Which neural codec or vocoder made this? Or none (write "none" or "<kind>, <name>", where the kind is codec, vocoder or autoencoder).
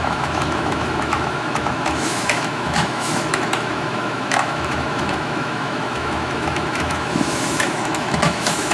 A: autoencoder, DAC-VAE